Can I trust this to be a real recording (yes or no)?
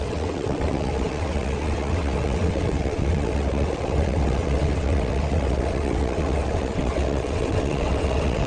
no